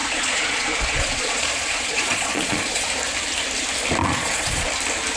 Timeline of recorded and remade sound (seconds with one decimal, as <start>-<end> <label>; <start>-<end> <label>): 0.0-2.9 remade; 2.9-4.0 recorded; 4.0-4.7 remade; 4.7-5.2 recorded